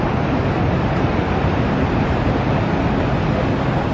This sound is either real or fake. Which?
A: real